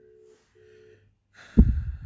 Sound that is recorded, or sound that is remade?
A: recorded